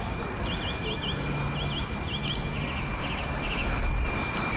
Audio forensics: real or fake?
real